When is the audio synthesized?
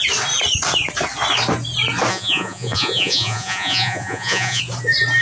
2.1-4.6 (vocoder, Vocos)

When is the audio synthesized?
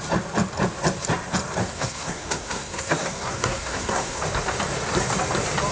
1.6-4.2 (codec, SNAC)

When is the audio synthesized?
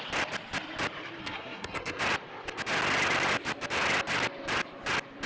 1.2-2.0 (codec, SNAC)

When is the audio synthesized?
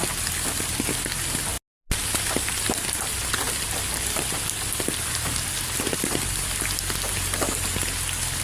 none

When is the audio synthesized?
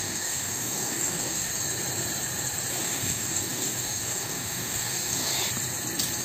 0.0-1.5 (codec, DAC); 2.8-5.3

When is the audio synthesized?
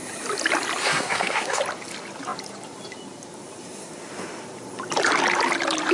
0.8-1.6 (codec, SNAC)